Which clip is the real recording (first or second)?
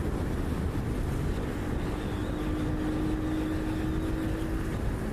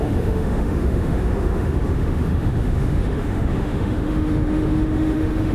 first